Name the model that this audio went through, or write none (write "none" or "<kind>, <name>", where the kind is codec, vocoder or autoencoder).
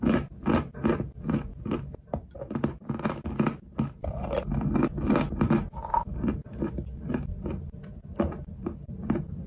none